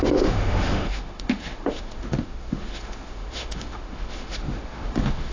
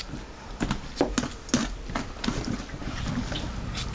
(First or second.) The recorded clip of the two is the second